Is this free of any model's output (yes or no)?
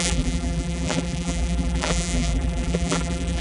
no